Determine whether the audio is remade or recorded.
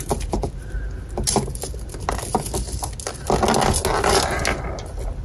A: recorded